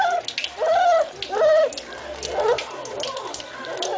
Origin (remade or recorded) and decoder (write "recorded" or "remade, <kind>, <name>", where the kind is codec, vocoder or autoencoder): recorded